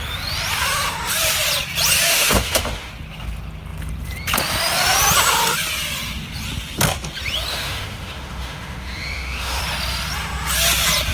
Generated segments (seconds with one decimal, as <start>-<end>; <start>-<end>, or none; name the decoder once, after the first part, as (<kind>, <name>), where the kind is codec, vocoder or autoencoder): 2.1-2.9 (autoencoder, DAC-VAE); 7.5-9.6